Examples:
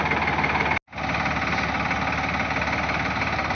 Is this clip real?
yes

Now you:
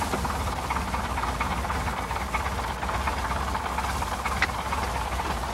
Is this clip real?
yes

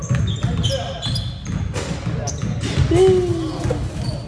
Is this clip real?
yes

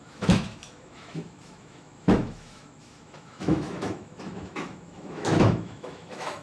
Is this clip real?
no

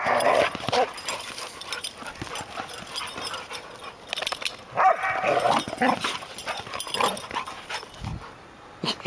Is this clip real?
yes